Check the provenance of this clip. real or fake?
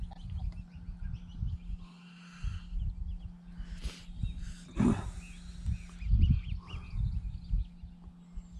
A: real